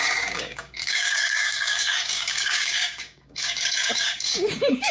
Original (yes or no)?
no